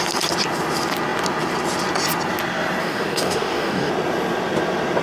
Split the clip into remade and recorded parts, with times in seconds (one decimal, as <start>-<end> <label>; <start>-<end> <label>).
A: 0.0-2.8 recorded; 2.8-3.9 remade; 3.9-5.0 recorded